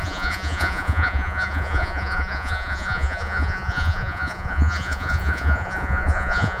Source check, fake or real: fake